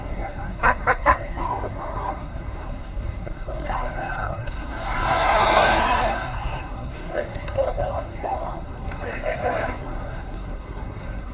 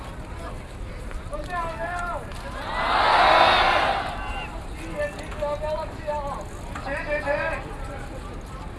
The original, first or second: second